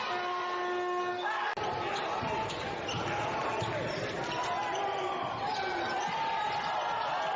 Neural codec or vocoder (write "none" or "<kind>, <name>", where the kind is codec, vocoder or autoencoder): none